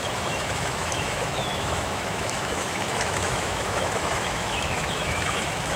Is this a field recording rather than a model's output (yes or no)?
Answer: no